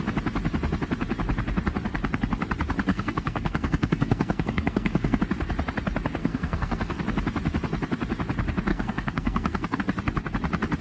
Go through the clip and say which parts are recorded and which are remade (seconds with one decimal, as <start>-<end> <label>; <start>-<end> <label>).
0.0-2.9 recorded; 2.9-5.2 remade; 5.2-6.2 recorded; 6.2-7.0 remade; 7.0-8.7 recorded; 8.7-9.8 remade; 9.8-10.8 recorded